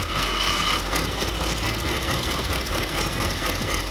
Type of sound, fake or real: fake